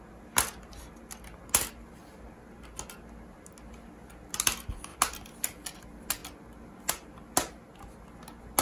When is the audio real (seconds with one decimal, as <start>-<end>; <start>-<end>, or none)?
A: 0.0-8.6